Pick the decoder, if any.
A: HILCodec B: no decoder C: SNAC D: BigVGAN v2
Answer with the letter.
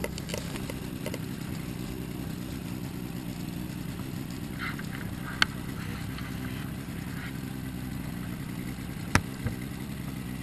B